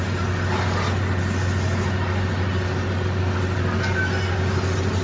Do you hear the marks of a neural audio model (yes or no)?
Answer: no